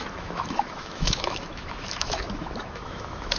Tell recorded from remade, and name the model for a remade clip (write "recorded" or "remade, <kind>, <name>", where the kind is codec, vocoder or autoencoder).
remade, autoencoder, DAC-VAE